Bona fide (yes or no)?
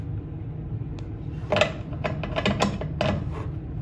yes